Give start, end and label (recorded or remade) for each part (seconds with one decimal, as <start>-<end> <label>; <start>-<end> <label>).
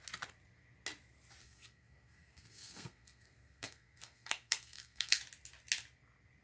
0.0-1.4 recorded; 1.4-5.2 remade; 5.2-6.4 recorded